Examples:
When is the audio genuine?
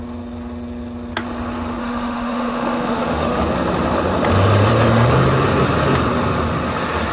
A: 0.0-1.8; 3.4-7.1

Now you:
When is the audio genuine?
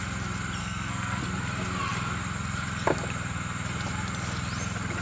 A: 0.0-0.6; 1.2-5.0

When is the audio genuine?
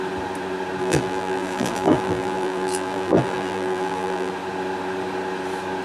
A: 0.0-0.8; 4.3-5.8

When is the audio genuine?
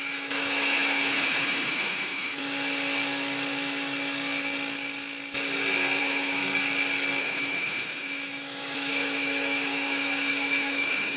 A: 2.4-6.0; 6.4-7.2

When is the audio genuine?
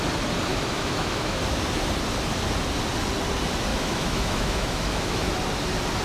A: 0.0-0.5; 1.4-3.7; 5.3-6.0